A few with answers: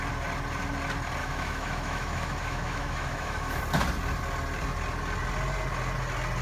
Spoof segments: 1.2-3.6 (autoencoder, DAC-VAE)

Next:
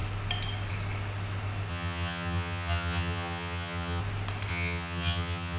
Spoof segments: 1.7-4.0 (vocoder, HiFi-GAN); 4.5-5.6

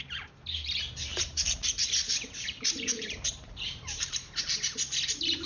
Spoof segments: 1.1-4.4 (vocoder, BigVGAN v2)

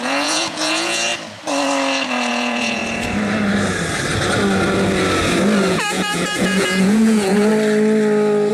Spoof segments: 0.0-1.1 (vocoder, Vocos); 2.3-2.8; 5.7-7.5

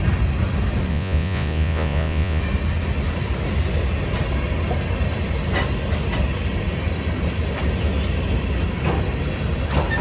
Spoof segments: 0.9-2.4 (vocoder, Vocos)

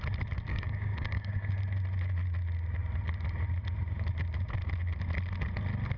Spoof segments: 0.5-1.6 (codec, DAC)